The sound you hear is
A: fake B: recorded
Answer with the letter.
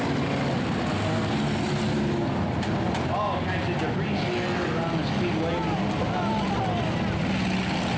B